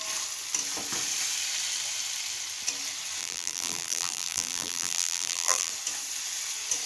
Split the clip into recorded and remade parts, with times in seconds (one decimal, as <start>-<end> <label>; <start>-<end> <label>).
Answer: 0.0-3.2 recorded; 3.2-5.7 remade; 5.7-6.9 recorded